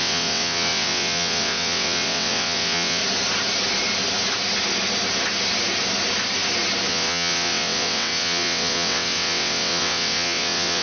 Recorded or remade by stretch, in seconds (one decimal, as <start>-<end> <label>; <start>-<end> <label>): 0.0-3.0 remade; 3.0-6.9 recorded; 6.9-10.8 remade